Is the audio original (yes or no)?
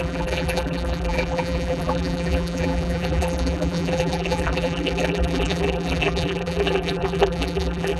no